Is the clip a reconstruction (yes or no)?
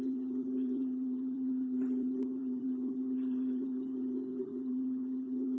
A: yes